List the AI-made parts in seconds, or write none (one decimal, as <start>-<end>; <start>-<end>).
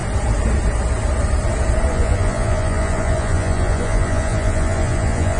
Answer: 1.9-5.4